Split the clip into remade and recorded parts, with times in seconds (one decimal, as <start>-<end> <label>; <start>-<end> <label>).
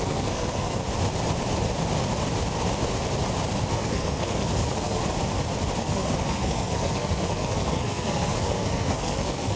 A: 0.0-0.8 remade; 0.8-3.7 recorded; 3.7-5.0 remade; 5.0-5.8 recorded; 5.8-9.6 remade